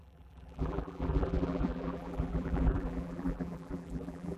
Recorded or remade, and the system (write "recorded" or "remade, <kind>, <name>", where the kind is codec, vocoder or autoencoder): remade, vocoder, BigVGAN v2